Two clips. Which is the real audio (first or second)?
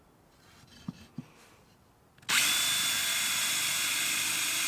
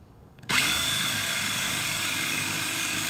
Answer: first